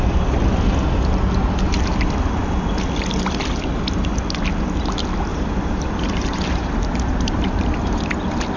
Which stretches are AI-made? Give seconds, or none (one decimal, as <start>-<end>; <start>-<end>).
5.3-8.0